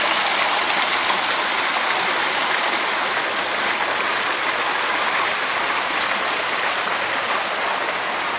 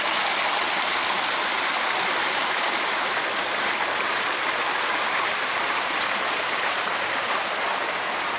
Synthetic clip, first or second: second